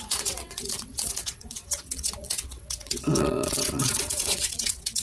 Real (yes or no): no